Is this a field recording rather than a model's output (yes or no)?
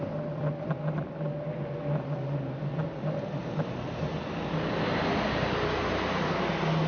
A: yes